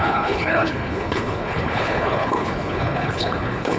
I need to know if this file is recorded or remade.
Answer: remade